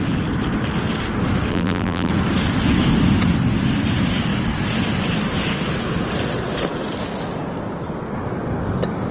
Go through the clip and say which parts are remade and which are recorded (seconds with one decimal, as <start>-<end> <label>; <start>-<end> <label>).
0.0-1.5 recorded; 1.5-2.1 remade; 2.1-9.1 recorded